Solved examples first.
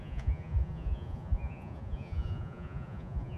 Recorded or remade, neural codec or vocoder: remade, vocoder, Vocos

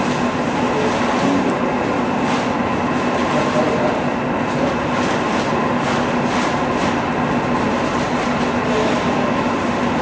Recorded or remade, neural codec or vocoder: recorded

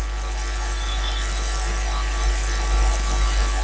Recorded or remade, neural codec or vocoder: recorded